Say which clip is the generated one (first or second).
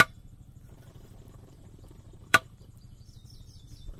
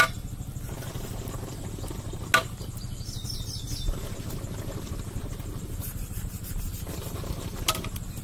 first